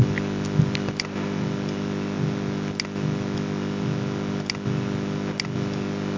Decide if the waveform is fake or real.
real